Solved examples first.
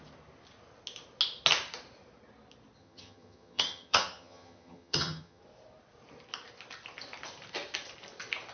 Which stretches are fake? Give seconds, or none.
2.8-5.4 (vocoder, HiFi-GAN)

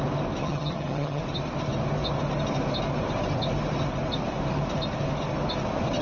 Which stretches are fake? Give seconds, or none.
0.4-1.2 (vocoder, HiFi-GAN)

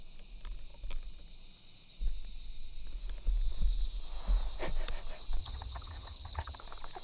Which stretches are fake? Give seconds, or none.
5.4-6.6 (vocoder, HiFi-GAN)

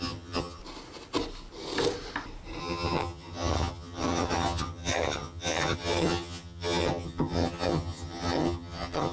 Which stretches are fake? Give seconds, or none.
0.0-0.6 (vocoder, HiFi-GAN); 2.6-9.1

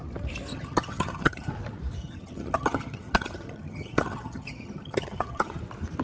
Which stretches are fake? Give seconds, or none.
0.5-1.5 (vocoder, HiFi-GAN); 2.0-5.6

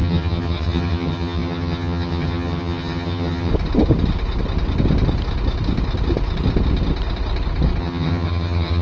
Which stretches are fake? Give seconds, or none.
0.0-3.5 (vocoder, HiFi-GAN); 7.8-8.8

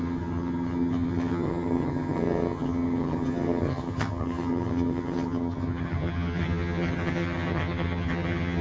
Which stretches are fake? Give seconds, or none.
0.0-8.6 (vocoder, HiFi-GAN)

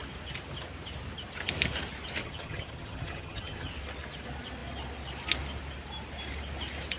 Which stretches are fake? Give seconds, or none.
2.2-3.7 (vocoder, HiFi-GAN)